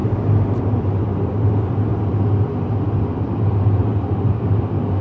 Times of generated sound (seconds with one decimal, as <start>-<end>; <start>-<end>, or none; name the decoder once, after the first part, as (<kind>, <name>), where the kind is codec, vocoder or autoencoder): 0.0-1.9 (vocoder, BigVGAN v2); 3.2-5.0